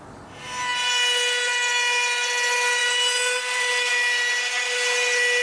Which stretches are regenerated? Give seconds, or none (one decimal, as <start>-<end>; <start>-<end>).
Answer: none